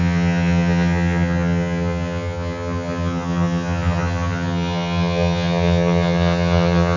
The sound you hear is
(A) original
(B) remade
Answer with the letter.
B